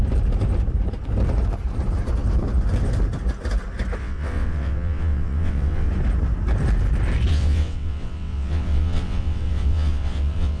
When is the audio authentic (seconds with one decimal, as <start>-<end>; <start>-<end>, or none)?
0.0-4.0; 5.9-7.3